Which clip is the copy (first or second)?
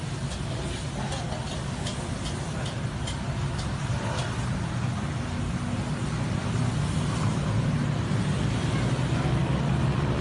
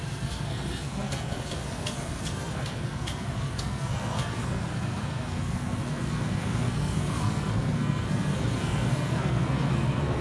second